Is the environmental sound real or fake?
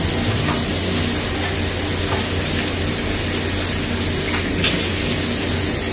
real